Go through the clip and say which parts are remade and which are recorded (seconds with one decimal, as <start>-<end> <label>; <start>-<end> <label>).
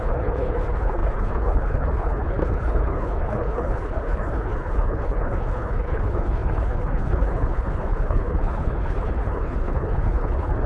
0.0-10.7 remade